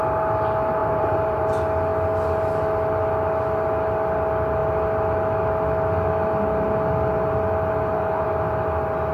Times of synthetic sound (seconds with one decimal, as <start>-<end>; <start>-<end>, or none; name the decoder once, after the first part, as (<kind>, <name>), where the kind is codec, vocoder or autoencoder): 0.8-1.5 (vocoder, BigVGAN v2)